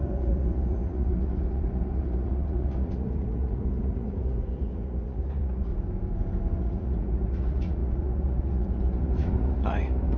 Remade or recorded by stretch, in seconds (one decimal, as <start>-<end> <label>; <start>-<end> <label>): 0.0-5.7 remade; 5.7-6.6 recorded; 6.6-10.2 remade